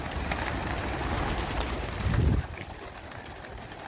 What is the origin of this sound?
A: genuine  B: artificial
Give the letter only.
A